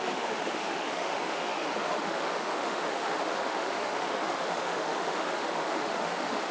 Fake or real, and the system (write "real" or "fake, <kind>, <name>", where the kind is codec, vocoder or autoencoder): fake, autoencoder, DAC-VAE